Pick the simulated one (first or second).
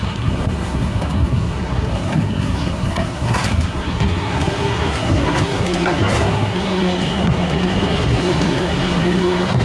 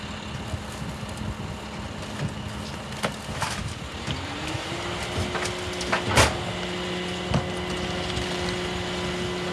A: first